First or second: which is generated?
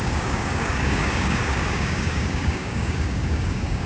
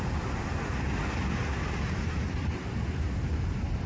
first